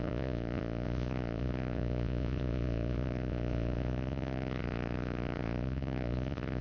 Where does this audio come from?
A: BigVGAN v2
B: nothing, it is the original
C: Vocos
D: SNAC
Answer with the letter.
C